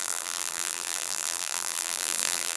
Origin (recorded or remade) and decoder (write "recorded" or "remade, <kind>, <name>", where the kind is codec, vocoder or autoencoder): remade, vocoder, BigVGAN v2